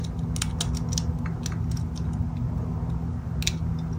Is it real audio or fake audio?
real